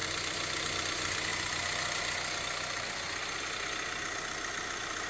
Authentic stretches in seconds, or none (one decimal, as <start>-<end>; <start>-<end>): 0.0-5.1